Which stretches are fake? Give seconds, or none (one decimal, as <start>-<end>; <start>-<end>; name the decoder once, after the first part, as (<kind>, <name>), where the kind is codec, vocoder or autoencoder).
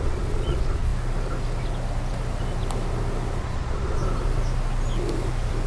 0.0-0.9 (vocoder, Vocos); 3.4-4.0